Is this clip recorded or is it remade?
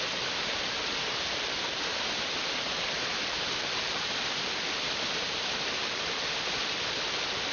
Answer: recorded